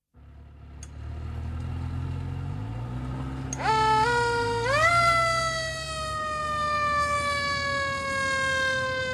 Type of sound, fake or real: real